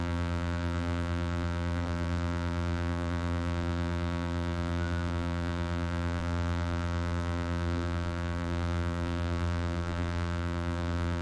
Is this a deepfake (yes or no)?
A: yes